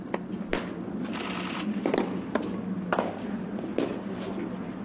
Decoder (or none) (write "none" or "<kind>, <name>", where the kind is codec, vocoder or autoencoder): none